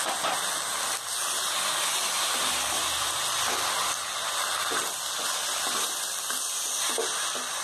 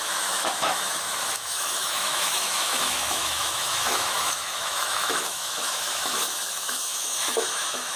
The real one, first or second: first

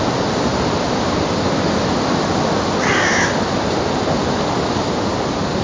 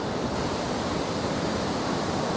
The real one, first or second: first